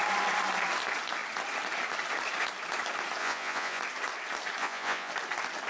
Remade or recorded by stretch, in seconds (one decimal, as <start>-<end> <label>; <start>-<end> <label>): 0.0-3.2 recorded; 3.2-3.8 remade; 3.8-4.6 recorded; 4.6-5.1 remade; 5.1-5.7 recorded